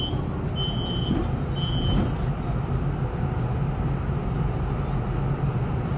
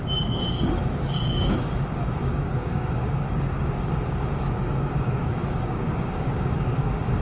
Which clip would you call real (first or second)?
first